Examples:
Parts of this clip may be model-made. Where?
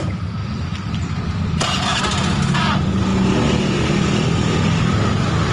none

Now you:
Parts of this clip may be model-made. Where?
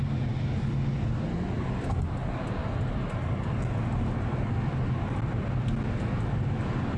none